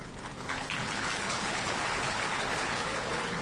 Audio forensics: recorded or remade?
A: remade